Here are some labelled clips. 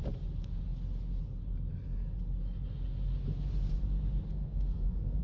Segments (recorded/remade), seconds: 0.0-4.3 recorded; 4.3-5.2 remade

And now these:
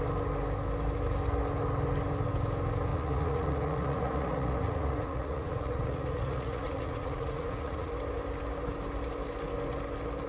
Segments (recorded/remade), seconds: 0.0-2.9 recorded; 2.9-7.9 remade; 7.9-10.3 recorded

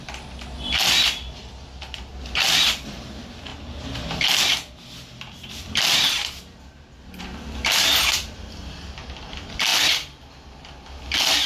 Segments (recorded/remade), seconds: 0.0-11.5 recorded

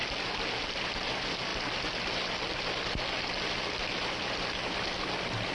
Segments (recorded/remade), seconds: 0.0-0.9 recorded; 0.9-1.5 remade; 1.5-4.8 recorded; 4.8-5.5 remade

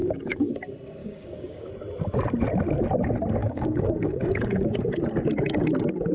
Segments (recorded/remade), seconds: 0.0-0.5 remade; 0.5-1.0 recorded; 1.0-1.7 remade; 1.7-3.4 recorded; 3.4-4.7 remade; 4.7-6.1 recorded